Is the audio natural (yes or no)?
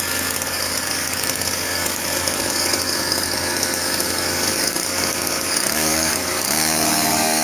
no